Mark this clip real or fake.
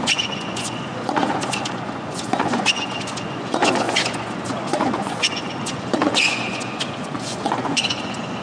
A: fake